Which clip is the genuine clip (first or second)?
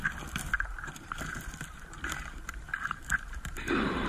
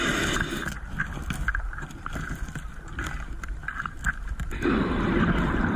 second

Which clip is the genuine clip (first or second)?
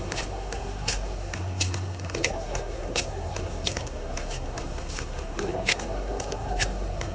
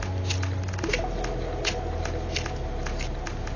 second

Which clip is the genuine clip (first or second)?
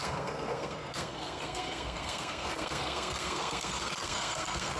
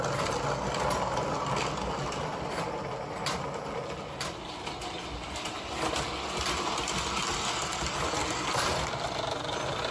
second